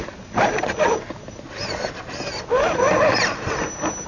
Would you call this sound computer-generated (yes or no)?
no